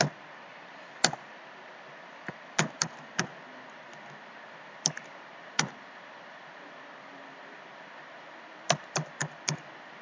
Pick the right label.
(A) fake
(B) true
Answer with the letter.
A